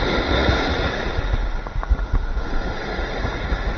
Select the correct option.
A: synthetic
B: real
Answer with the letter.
A